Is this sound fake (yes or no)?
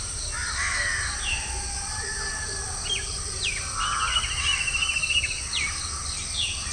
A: no